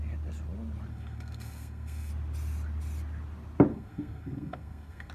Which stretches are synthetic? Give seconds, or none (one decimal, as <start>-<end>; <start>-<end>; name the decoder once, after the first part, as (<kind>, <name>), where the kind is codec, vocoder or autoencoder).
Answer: 0.9-2.1 (codec, SNAC); 3.7-5.1